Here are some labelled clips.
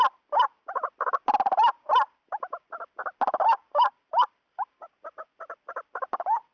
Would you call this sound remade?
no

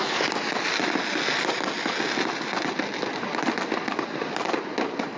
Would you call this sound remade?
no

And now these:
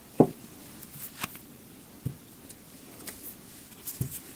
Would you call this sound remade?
no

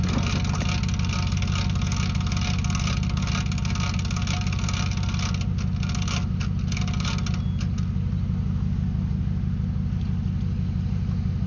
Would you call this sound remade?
no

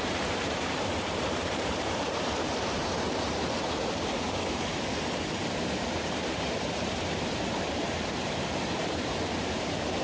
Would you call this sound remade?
yes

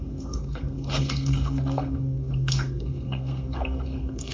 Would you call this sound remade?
yes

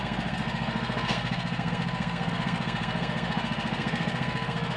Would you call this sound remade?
yes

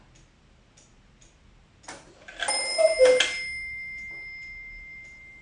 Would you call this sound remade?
no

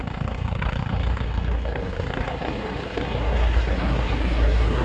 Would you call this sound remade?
yes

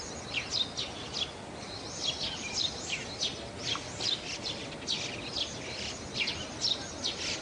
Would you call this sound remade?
no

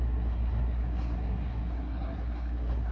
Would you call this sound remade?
yes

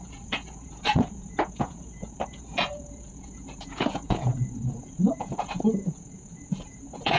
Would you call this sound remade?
yes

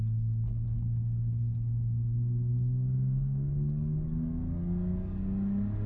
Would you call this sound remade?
yes